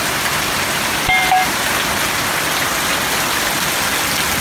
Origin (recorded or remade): recorded